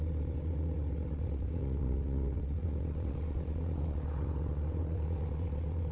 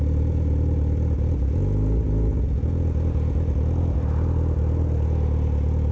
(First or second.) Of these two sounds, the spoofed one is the first